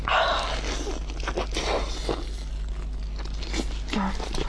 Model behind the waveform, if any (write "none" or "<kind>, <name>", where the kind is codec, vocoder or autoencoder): none